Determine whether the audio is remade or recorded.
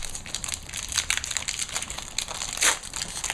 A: recorded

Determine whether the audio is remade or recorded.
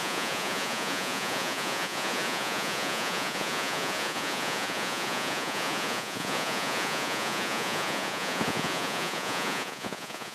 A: remade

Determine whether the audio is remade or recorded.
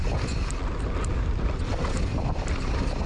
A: recorded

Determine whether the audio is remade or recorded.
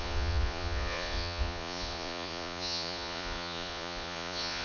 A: remade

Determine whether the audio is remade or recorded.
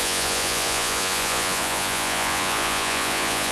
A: remade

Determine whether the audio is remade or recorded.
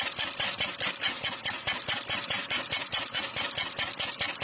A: recorded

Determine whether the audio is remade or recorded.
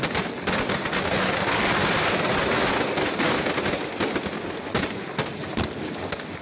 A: recorded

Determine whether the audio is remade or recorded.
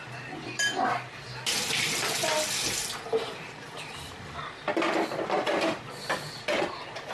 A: recorded